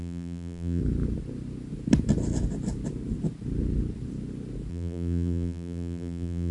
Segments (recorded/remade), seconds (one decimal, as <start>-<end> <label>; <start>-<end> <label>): 0.0-0.8 remade; 0.8-4.7 recorded; 4.7-6.5 remade